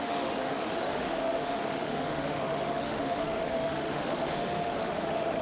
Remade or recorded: remade